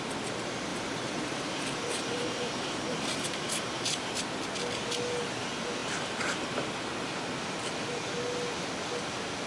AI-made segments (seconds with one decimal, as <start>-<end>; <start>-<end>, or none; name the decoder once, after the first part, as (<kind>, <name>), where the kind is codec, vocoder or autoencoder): 0.7-4.2 (vocoder, BigVGAN v2)